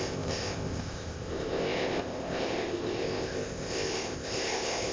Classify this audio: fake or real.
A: fake